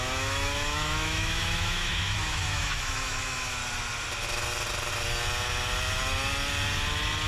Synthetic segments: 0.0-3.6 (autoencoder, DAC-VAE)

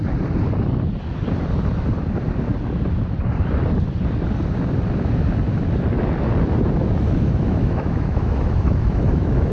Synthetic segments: 6.8-9.5 (autoencoder, DAC-VAE)

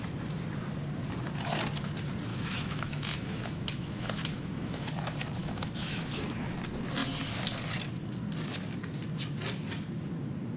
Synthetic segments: 2.3-4.9 (autoencoder, DAC-VAE); 5.4-6.5

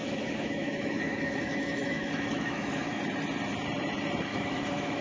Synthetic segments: 0.0-3.0 (autoencoder, DAC-VAE); 4.3-5.0

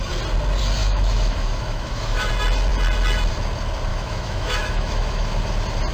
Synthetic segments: 0.8-2.3 (autoencoder, DAC-VAE); 3.9-5.3

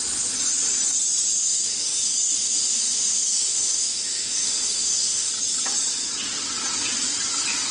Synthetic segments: 1.4-5.3 (autoencoder, DAC-VAE)

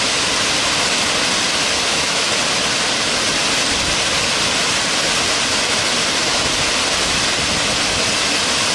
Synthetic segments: 1.9-2.4 (autoencoder, DAC-VAE)